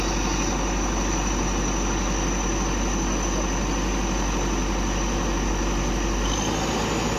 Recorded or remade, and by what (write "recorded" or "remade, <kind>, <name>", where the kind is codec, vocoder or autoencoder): recorded